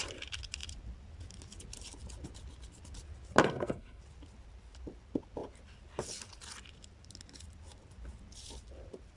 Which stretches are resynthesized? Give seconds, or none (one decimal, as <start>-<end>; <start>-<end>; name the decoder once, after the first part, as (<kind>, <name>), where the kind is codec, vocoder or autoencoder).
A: 3.4-4.0 (codec, SNAC)